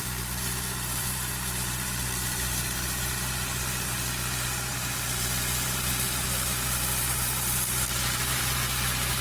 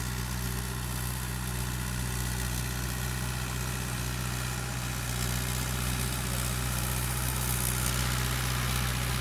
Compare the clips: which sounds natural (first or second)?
second